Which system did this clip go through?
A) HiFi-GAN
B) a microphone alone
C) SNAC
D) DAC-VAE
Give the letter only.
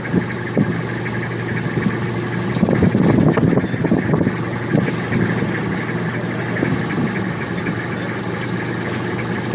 B